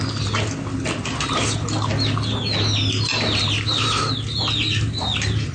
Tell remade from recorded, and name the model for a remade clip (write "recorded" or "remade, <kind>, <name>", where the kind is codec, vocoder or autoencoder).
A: recorded